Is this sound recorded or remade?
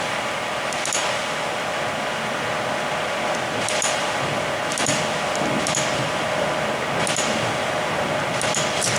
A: recorded